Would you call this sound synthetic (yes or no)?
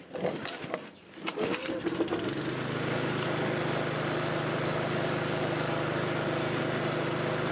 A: no